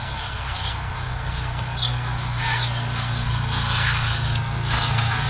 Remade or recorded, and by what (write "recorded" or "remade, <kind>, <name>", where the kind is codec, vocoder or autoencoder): remade, codec, SNAC